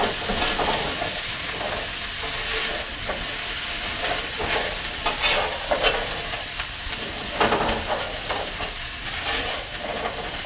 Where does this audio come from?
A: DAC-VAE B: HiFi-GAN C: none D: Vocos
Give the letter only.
C